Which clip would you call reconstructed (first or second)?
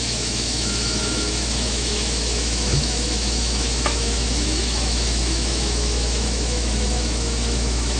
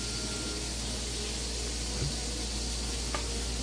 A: first